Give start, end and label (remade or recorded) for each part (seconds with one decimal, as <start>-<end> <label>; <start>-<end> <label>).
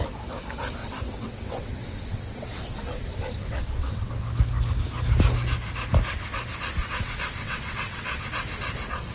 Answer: 0.0-0.8 recorded; 0.8-4.1 remade; 4.1-6.8 recorded; 6.8-8.3 remade; 8.3-9.1 recorded